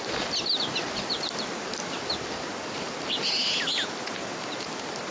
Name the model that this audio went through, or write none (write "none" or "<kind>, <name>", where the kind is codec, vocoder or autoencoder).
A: none